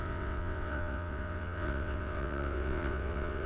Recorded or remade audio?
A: remade